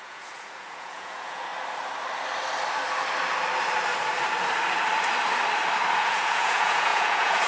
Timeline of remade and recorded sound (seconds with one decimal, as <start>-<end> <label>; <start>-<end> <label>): 0.0-1.5 remade; 1.5-6.0 recorded; 6.0-7.5 remade